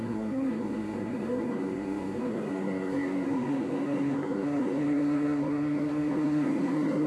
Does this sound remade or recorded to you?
remade